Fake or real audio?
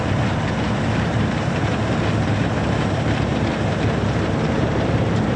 fake